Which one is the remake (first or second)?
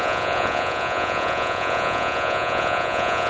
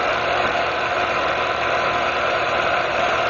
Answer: first